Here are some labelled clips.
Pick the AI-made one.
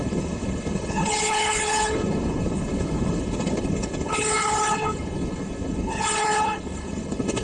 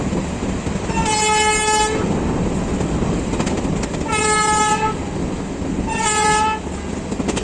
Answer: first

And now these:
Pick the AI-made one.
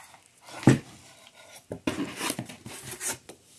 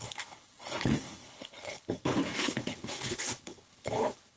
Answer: second